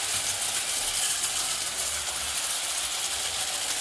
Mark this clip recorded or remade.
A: recorded